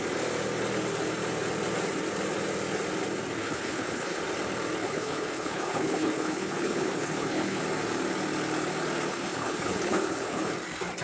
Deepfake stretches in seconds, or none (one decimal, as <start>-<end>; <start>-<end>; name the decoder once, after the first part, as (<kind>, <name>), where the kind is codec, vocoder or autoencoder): 3.4-4.2 (codec, HILCodec); 4.8-7.6; 9.1-10.5